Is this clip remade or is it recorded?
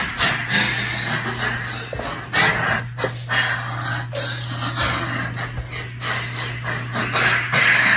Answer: recorded